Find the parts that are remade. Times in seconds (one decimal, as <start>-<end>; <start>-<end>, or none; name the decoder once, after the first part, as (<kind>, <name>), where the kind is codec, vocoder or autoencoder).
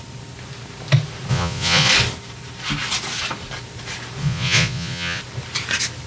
1.3-1.9 (vocoder, Vocos); 4.2-5.2